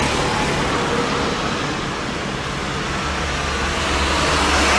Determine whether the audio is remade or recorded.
recorded